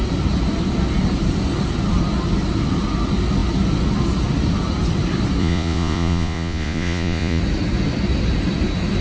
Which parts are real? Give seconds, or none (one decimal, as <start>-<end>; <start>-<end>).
0.0-5.4; 7.4-9.0